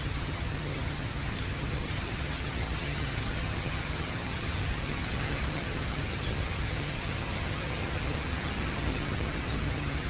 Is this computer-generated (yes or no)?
yes